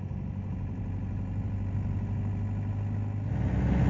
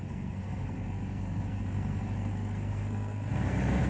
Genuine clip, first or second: first